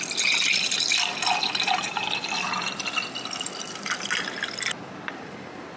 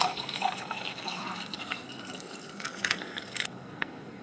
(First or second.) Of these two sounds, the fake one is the second